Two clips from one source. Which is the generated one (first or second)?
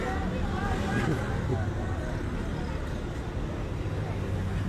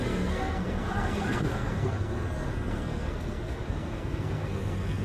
second